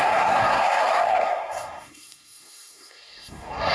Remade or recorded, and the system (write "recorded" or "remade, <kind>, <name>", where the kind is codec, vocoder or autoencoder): remade, codec, SNAC